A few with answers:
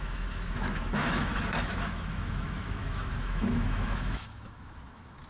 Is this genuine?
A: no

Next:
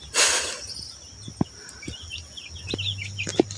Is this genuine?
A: yes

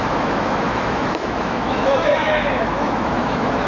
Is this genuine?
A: no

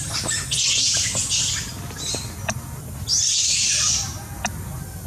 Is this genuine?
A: yes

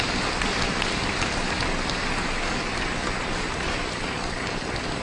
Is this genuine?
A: yes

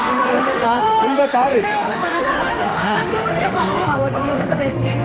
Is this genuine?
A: no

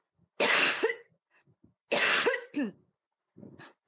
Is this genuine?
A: yes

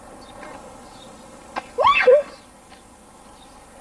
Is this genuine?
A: yes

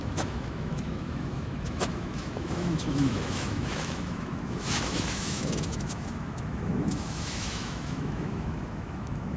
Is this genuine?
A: no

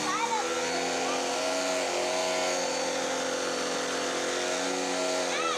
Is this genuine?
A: yes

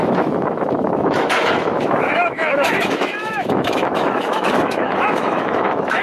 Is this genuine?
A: no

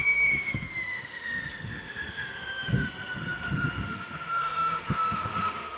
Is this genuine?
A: no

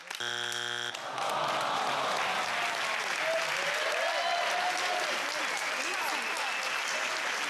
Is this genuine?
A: yes